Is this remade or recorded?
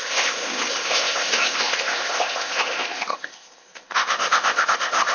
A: remade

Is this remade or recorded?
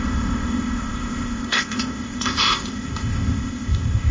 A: remade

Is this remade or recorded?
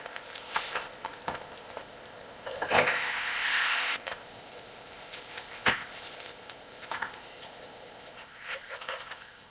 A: remade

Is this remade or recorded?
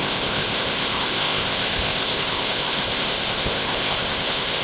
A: remade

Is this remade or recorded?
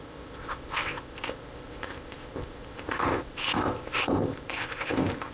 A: remade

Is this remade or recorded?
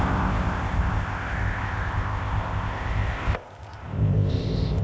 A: remade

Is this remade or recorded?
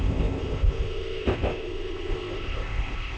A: remade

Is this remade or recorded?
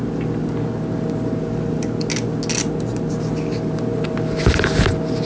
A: recorded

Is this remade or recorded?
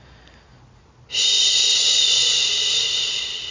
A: recorded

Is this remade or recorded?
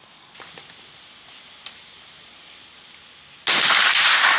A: recorded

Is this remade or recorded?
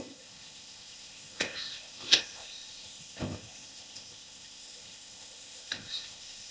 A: remade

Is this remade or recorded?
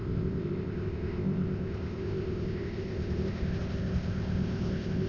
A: remade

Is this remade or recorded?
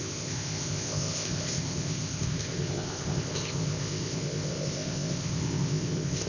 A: remade